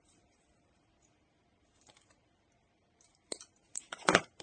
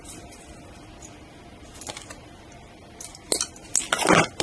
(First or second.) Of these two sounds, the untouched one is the second